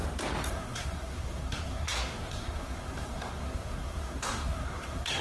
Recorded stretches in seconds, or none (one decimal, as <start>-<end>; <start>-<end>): 0.0-0.5